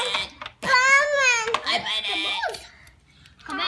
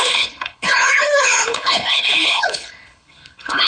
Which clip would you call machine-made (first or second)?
second